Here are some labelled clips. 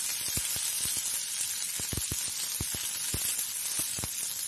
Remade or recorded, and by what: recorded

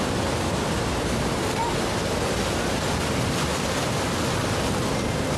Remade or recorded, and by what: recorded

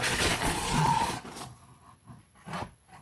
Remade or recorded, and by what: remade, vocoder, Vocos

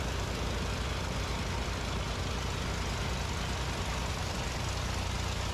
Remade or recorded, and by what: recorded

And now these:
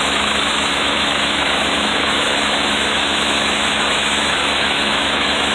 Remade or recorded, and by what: remade, autoencoder, DAC-VAE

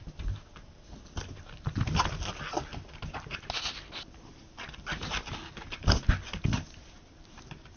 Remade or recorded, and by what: recorded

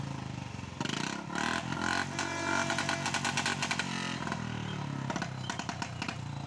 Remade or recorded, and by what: recorded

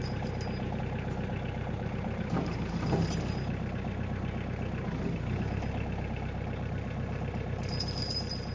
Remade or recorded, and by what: remade, vocoder, BigVGAN v2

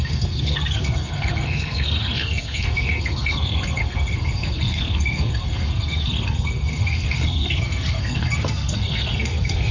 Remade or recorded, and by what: remade, codec, SNAC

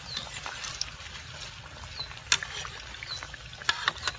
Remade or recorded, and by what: recorded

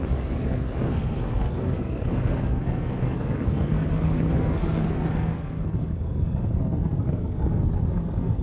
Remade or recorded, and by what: remade, codec, SNAC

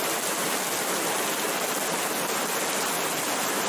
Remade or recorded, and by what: recorded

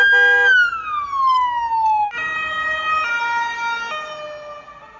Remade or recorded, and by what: recorded